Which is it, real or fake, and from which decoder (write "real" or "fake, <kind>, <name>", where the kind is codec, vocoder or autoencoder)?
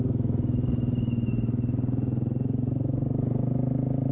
real